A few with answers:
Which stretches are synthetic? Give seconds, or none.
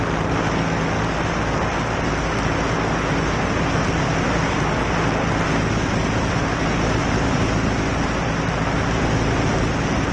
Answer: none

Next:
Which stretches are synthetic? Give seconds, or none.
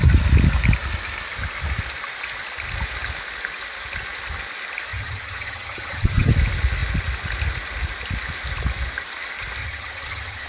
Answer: 4.9-6.3 (vocoder, HiFi-GAN); 9.6-10.5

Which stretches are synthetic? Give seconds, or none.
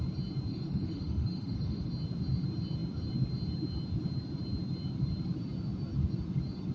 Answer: 0.5-1.9 (autoencoder, DAC-VAE)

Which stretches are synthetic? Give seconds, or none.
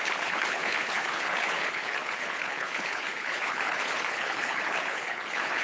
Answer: 0.0-5.6 (codec, HILCodec)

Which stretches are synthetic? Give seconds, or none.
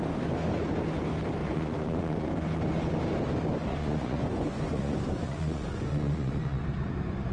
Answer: 1.4-2.3 (vocoder, Vocos); 3.7-6.6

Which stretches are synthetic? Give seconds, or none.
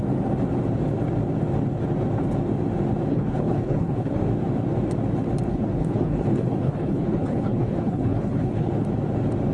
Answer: 3.1-4.2 (codec, HILCodec); 5.5-8.7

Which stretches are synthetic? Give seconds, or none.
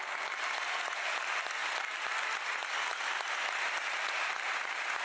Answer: none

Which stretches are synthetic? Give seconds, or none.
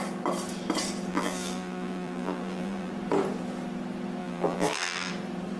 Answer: 1.1-2.9 (vocoder, BigVGAN v2); 4.2-5.1